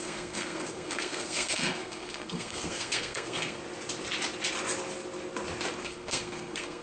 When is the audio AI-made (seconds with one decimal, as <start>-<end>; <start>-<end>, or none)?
0.0-3.6; 5.8-6.8